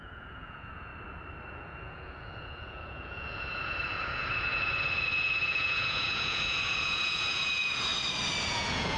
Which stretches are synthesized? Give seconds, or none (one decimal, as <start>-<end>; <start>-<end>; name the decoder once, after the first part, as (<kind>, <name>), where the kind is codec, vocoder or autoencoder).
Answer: 0.0-0.9 (vocoder, Vocos); 1.5-7.9; 8.5-9.0